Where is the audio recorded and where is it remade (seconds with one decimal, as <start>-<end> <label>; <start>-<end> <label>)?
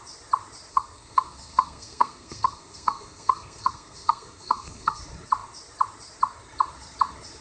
0.0-0.7 recorded; 0.7-5.0 remade; 5.0-7.4 recorded